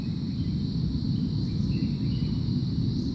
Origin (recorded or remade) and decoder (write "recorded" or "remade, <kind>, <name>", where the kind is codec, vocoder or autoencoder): remade, vocoder, BigVGAN v2